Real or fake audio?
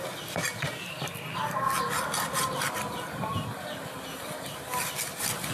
real